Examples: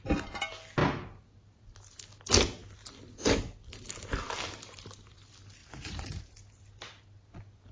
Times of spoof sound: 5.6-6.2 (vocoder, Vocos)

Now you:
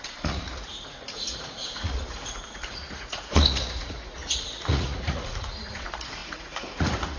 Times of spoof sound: 0.0-7.2 (vocoder, Vocos)

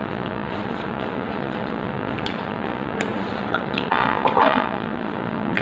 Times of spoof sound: 0.0-5.6 (vocoder, Vocos)

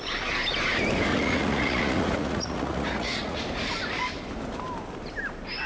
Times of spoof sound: 1.1-3.4 (vocoder, Vocos)